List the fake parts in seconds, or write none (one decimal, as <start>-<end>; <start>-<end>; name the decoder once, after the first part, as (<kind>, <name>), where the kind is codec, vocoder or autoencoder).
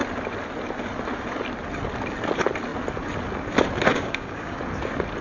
3.9-4.6 (codec, DAC)